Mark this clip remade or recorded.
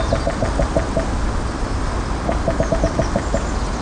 recorded